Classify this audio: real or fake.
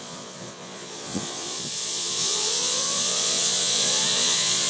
fake